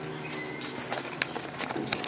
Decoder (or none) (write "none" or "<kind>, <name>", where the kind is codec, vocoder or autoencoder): none